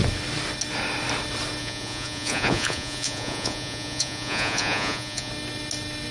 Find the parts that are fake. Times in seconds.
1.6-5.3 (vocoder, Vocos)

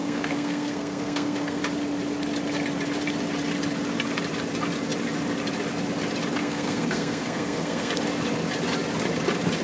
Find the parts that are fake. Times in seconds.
0.0-1.6 (codec, SNAC); 6.4-7.9

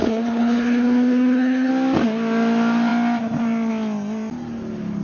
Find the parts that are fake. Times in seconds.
0.0-1.7 (codec, HILCodec)